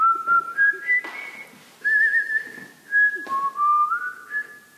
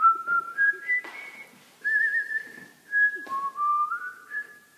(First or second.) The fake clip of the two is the second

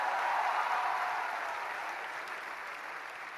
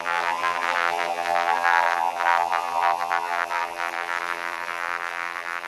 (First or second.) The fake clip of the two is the second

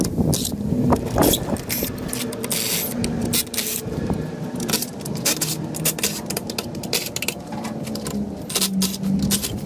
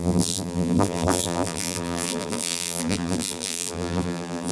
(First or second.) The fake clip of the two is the second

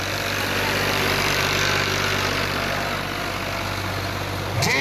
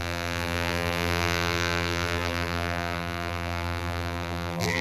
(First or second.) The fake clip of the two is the second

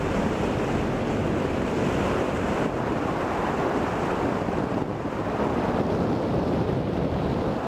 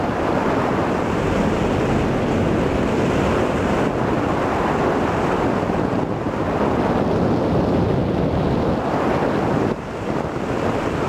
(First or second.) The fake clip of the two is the first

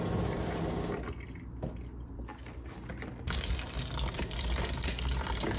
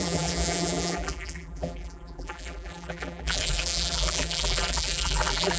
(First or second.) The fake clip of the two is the second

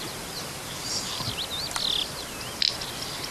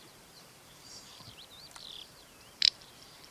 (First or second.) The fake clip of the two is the second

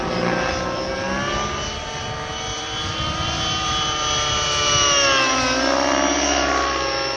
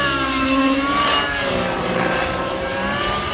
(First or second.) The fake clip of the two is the second